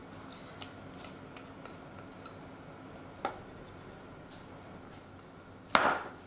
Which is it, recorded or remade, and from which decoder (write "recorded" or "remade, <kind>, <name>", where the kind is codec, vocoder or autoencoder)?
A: recorded